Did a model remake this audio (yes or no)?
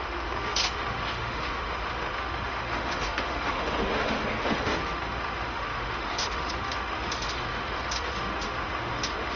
yes